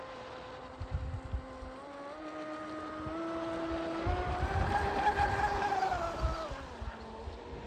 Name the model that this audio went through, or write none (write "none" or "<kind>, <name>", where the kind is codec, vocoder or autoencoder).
none